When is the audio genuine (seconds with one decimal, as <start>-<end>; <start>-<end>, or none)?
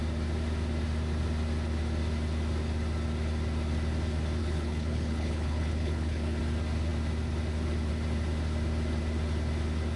0.0-4.4; 6.4-10.0